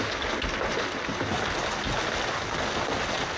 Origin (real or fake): real